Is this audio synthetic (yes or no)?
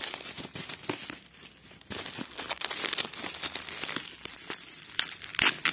no